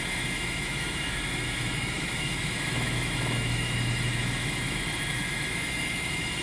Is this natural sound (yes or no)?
no